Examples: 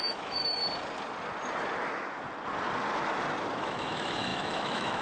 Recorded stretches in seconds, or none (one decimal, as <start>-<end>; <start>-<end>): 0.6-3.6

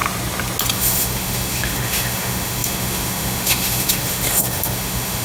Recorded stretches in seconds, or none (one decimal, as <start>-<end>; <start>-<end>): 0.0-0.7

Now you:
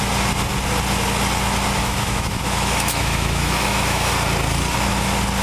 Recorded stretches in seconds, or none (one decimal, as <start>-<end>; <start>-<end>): 0.0-1.8; 4.1-5.4

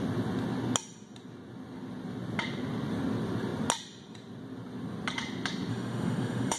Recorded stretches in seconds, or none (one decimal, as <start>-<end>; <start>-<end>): 0.0-5.7

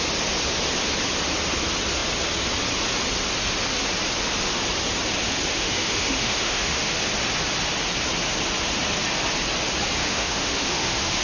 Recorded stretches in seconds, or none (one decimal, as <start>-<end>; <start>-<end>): 0.0-5.5; 6.9-10.0